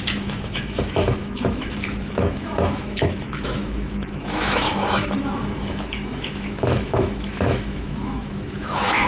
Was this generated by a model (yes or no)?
yes